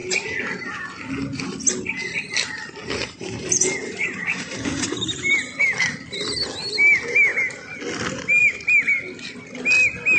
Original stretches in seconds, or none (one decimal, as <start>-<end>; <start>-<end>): 0.0-2.8; 5.3-10.2